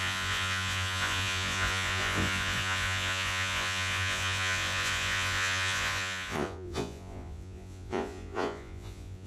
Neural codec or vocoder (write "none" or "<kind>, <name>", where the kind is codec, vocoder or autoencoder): vocoder, Vocos